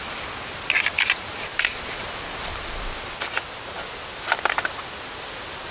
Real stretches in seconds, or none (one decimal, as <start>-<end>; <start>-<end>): 0.0-5.7

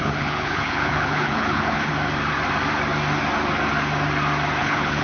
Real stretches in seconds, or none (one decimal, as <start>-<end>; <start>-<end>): 1.9-4.6

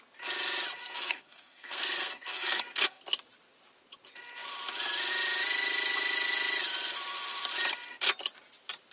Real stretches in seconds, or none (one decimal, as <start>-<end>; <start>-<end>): 0.0-0.8; 3.0-8.9

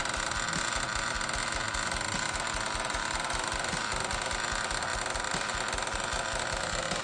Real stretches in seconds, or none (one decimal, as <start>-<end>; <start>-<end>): 0.0-7.0

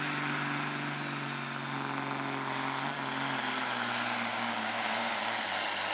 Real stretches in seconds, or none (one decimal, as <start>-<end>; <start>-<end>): 0.0-4.3; 5.2-5.9

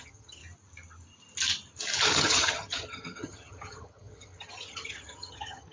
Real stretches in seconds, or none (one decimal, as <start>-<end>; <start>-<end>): 0.4-2.2

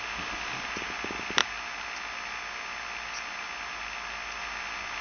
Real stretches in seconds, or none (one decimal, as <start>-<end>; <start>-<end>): 0.0-5.0